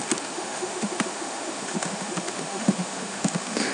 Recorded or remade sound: remade